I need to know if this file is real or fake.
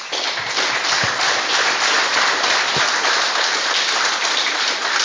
real